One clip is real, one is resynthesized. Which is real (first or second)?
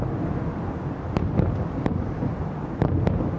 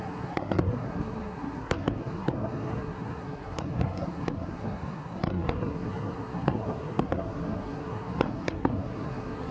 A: first